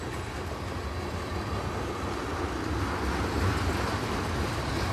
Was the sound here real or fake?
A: real